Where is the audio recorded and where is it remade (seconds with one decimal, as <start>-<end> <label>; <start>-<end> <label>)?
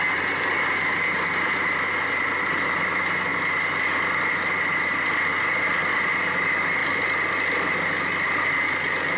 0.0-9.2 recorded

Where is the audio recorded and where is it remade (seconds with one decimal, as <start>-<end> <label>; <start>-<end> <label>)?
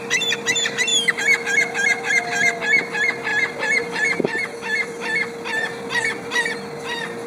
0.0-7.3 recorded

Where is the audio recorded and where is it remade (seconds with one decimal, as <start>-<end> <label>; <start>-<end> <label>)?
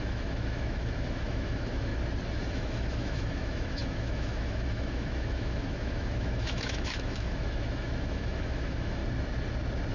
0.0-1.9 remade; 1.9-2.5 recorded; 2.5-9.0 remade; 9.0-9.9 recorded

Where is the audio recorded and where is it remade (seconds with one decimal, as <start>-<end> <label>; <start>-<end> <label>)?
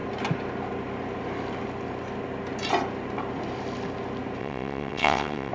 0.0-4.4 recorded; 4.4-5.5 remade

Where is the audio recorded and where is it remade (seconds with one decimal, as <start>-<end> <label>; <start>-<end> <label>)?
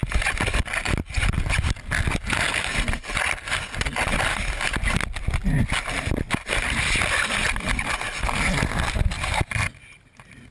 0.0-10.5 recorded